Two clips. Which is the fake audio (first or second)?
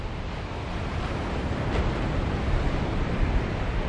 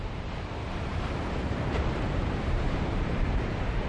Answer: second